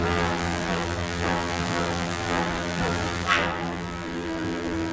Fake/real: fake